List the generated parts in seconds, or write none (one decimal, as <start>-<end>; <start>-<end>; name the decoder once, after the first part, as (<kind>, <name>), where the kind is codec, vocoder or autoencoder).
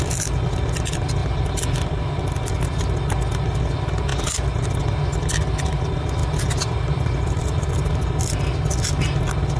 6.2-7.7 (vocoder, BigVGAN v2)